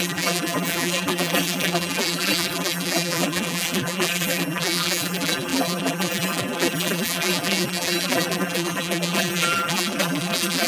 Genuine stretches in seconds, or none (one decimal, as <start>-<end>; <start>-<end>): none